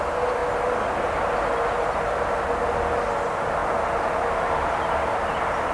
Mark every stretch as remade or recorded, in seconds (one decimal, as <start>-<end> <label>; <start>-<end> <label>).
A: 0.0-5.7 recorded

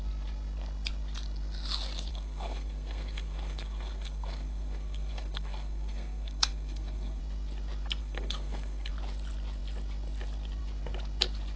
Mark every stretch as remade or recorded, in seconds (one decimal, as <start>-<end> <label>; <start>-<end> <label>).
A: 0.0-2.1 recorded; 2.1-7.2 remade; 7.2-8.0 recorded; 8.0-8.9 remade; 8.9-11.6 recorded

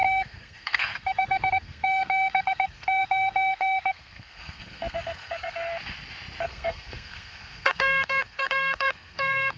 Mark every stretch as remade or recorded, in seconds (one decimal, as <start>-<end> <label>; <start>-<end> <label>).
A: 0.0-5.7 remade; 5.7-6.4 recorded; 6.4-9.6 remade

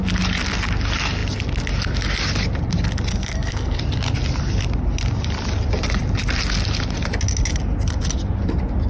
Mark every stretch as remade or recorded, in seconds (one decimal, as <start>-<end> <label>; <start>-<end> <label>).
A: 0.0-3.1 recorded; 3.1-3.8 remade; 3.8-8.9 recorded

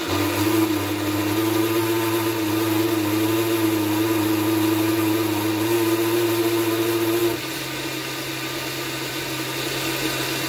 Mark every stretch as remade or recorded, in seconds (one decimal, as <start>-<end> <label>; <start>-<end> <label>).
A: 0.0-10.5 recorded

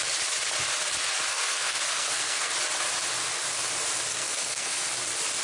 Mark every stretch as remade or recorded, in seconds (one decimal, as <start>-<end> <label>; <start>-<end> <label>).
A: 0.0-1.3 recorded; 1.3-2.5 remade; 2.5-4.1 recorded; 4.1-4.9 remade; 4.9-5.4 recorded

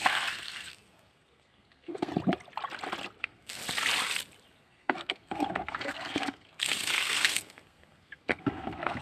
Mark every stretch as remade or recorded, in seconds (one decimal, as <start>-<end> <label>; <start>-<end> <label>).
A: 0.0-2.1 remade; 2.1-3.2 recorded; 3.2-3.6 remade; 3.6-4.6 recorded; 4.6-9.0 remade

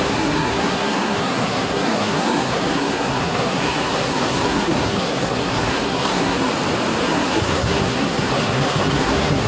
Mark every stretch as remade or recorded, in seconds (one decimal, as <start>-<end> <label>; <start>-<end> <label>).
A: 0.0-6.5 remade; 6.5-7.0 recorded; 7.0-9.5 remade